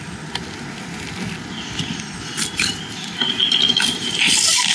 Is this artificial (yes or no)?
yes